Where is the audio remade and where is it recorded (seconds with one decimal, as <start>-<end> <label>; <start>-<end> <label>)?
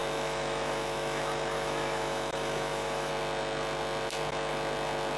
0.0-3.1 remade; 3.1-5.2 recorded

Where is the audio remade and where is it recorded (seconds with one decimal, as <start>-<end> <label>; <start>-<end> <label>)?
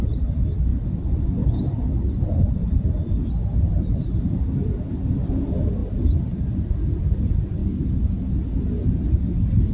0.0-9.7 recorded